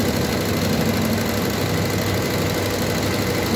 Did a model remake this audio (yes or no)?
no